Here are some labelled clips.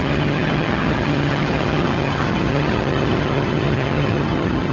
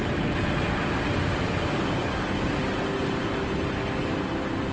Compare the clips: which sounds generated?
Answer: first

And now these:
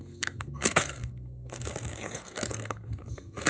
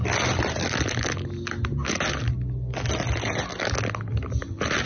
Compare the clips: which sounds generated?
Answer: first